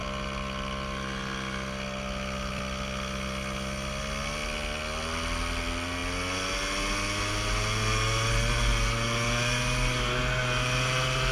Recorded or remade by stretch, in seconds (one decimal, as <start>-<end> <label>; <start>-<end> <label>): 0.0-11.3 recorded